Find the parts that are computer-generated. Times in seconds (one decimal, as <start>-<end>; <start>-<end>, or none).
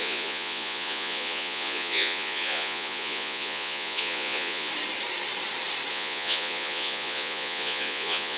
0.0-4.7; 5.9-8.4